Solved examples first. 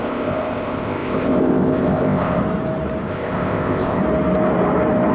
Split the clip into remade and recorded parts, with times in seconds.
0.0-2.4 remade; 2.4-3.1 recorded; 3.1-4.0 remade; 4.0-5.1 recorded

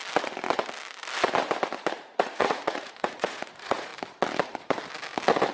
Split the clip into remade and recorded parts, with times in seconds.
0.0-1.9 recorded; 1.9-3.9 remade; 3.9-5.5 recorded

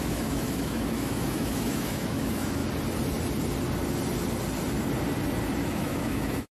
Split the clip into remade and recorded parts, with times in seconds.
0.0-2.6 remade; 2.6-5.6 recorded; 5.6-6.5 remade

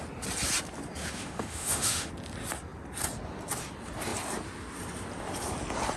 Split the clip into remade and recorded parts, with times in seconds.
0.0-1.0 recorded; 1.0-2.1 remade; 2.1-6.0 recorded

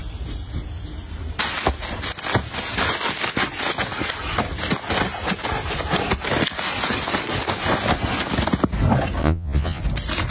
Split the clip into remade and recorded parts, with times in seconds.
0.0-9.2 recorded; 9.2-9.8 remade; 9.8-10.3 recorded

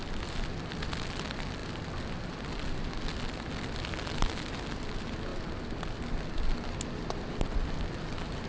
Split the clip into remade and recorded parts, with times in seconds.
0.0-8.5 recorded

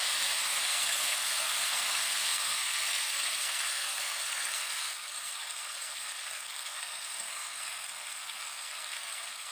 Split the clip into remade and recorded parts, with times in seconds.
0.0-9.5 remade